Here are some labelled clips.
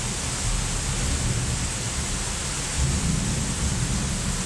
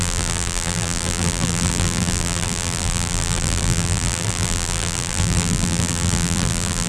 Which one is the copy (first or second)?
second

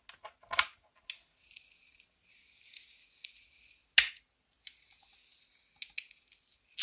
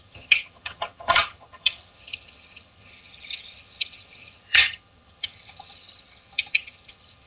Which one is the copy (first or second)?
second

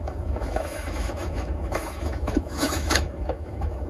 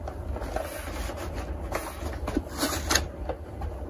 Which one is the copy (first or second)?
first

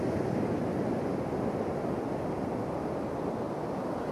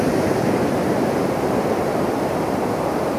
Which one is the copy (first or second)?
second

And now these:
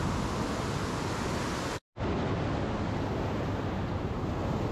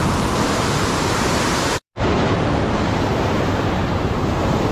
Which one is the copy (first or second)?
second